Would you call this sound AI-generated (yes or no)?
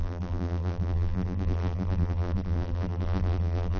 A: yes